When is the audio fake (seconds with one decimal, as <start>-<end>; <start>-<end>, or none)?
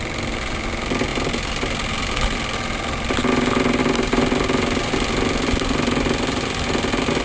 none